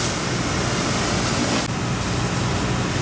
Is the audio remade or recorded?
recorded